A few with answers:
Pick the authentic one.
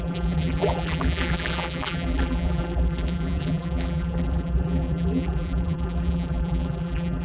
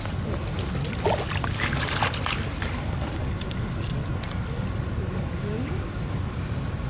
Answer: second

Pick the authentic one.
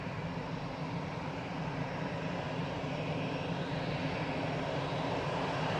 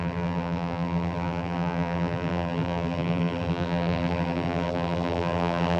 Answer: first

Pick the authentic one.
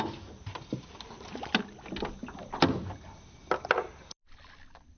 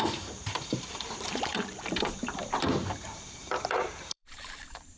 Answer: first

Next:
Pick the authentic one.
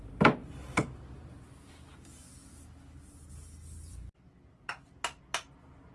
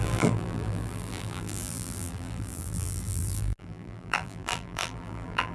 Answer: first